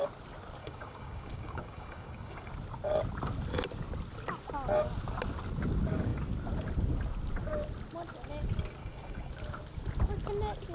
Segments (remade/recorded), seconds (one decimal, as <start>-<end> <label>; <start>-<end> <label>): 0.0-0.6 recorded; 0.6-2.5 remade; 2.5-8.8 recorded; 8.8-9.3 remade; 9.3-10.7 recorded